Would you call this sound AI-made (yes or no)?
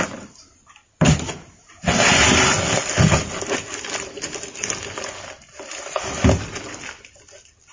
no